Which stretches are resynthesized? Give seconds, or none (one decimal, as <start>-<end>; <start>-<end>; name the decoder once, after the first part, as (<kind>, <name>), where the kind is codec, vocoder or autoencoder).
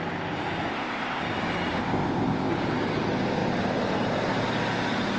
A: 0.7-1.2 (codec, ZipCodec); 1.8-2.5